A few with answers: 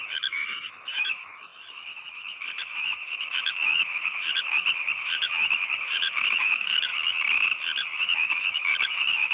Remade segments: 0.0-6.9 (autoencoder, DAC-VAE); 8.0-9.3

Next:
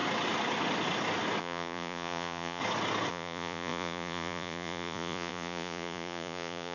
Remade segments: 1.4-2.6 (vocoder, Vocos); 3.1-6.7

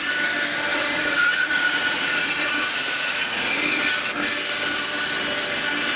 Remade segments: 0.7-3.6 (vocoder, Vocos)

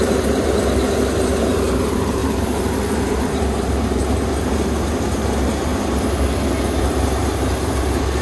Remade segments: 0.0-5.7 (vocoder, BigVGAN v2); 6.8-8.2

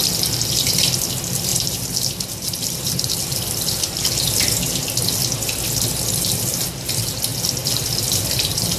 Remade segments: 7.3-8.8 (vocoder, BigVGAN v2)

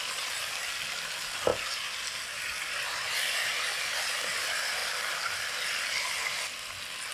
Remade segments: 0.0-1.5 (vocoder, BigVGAN v2); 3.8-4.8